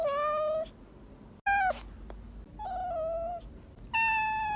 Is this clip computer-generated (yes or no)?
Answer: no